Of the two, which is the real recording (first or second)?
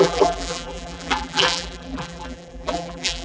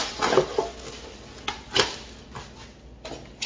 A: second